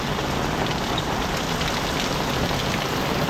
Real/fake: real